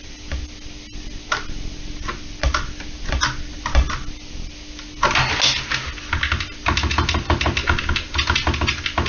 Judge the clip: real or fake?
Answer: real